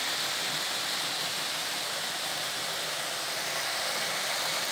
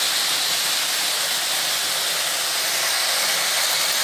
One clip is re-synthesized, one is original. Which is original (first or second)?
second